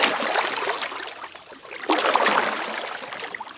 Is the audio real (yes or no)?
yes